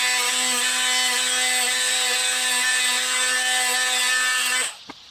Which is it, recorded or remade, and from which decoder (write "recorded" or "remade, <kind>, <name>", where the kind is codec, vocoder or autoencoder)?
recorded